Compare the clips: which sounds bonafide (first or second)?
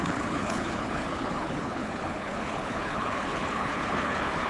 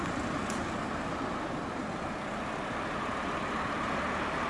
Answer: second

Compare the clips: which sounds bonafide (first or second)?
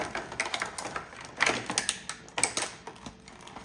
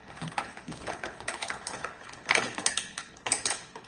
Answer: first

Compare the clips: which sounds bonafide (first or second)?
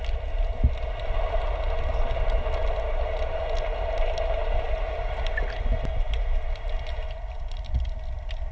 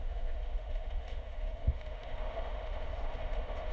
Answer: first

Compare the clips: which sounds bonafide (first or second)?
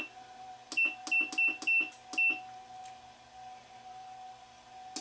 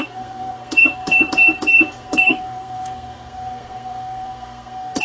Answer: first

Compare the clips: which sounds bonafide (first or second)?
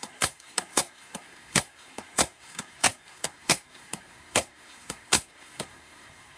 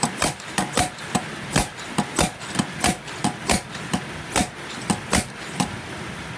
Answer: second